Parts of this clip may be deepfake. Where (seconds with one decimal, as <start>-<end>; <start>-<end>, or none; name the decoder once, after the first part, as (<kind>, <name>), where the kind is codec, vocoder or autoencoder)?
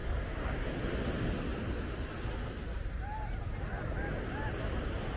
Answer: none